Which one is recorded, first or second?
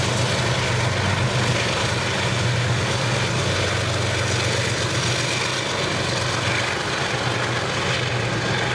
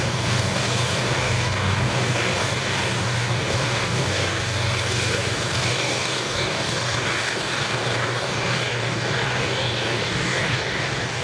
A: first